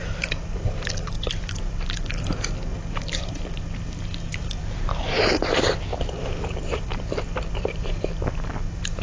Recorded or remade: remade